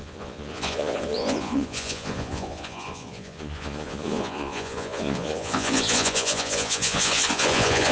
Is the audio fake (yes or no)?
yes